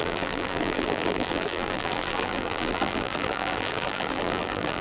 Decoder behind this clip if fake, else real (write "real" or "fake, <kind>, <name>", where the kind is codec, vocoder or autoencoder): fake, vocoder, BigVGAN v2